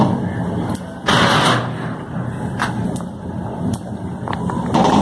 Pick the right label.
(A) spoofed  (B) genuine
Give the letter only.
B